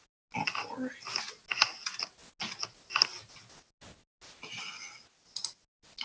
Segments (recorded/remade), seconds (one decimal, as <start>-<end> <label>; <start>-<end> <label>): 0.0-6.0 recorded